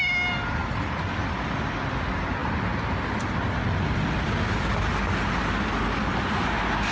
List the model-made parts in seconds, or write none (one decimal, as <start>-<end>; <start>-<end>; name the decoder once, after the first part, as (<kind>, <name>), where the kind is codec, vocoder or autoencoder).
none